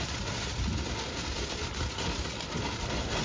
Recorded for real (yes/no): yes